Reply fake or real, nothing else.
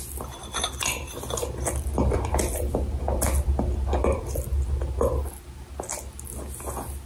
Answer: real